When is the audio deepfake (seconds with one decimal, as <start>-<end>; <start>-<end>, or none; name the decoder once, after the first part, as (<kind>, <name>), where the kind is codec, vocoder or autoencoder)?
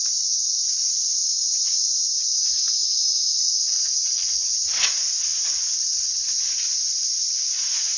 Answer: 1.3-1.8 (vocoder, Vocos)